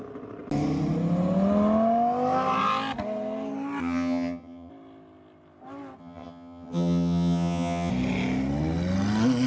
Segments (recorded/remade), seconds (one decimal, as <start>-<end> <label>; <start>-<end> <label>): 0.0-3.8 recorded; 3.8-4.7 remade; 4.7-6.0 recorded; 6.0-7.9 remade; 7.9-9.5 recorded

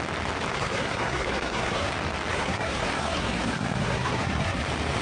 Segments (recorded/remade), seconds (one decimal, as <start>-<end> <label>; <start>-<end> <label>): 0.0-0.5 recorded; 0.5-1.9 remade; 1.9-2.3 recorded; 2.3-4.6 remade; 4.6-5.0 recorded